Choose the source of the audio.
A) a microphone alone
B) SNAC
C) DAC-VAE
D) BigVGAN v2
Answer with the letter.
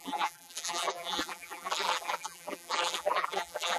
D